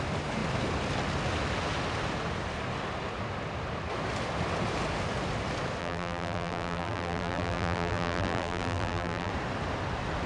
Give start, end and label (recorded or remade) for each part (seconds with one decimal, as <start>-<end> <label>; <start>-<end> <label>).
0.0-5.8 recorded; 5.8-9.3 remade; 9.3-10.3 recorded